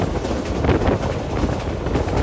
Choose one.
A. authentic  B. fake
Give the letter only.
A